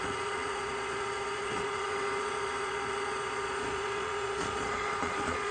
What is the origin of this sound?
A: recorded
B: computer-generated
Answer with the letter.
B